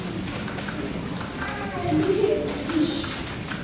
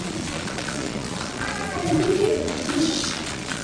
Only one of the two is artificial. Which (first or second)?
second